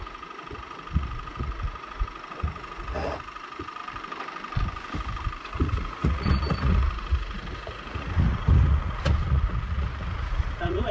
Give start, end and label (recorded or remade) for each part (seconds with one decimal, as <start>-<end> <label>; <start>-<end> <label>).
0.0-3.8 remade; 3.8-5.4 recorded; 5.4-10.9 remade